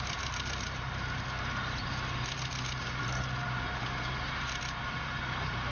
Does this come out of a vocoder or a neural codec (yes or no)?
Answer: yes